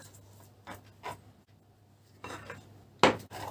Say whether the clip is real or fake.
real